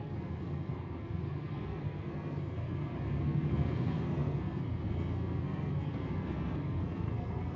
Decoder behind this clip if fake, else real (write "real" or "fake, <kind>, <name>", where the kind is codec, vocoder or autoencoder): fake, codec, SNAC